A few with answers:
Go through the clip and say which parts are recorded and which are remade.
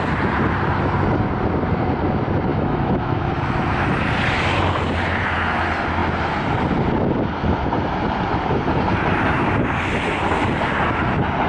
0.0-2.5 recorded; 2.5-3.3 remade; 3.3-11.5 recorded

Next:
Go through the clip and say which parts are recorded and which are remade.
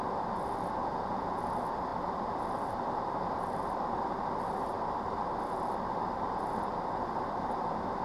0.0-0.8 recorded; 0.8-1.4 remade; 1.4-8.0 recorded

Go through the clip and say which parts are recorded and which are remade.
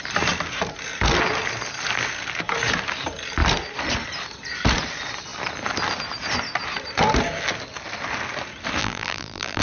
0.0-8.8 recorded; 8.8-9.6 remade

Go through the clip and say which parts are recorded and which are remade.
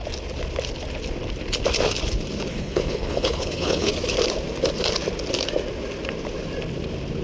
0.0-2.5 recorded; 2.5-3.9 remade; 3.9-7.2 recorded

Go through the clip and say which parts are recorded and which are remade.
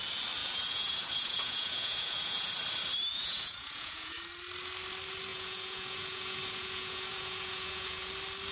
0.0-0.4 recorded; 0.4-2.5 remade; 2.5-3.1 recorded; 3.1-4.2 remade; 4.2-5.3 recorded; 5.3-8.1 remade; 8.1-8.5 recorded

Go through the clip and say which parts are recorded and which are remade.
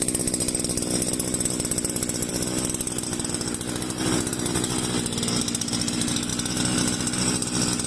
0.0-7.9 recorded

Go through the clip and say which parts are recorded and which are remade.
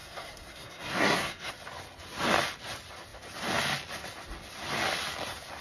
0.0-1.5 remade; 1.5-5.6 recorded